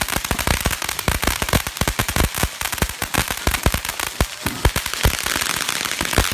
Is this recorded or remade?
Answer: recorded